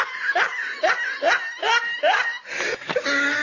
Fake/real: real